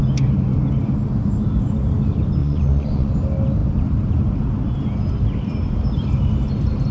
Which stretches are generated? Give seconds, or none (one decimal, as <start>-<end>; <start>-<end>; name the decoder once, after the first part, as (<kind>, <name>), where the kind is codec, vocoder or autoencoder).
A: 2.4-3.1 (vocoder, Vocos)